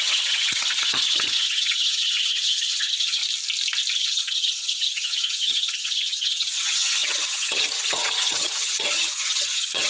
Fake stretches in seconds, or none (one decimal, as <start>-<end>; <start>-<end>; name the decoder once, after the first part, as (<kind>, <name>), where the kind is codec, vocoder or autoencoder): 0.0-3.2 (vocoder, HiFi-GAN); 3.9-9.9